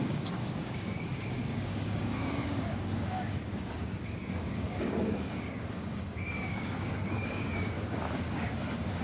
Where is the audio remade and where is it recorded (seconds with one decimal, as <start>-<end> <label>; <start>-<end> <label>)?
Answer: 0.0-9.0 remade